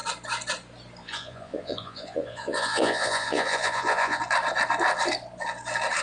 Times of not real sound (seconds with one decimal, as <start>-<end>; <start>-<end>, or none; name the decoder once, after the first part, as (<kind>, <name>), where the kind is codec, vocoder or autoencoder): 1.0-4.2 (vocoder, Vocos)